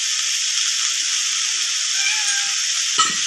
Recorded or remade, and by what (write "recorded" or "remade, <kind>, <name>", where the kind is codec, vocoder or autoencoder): recorded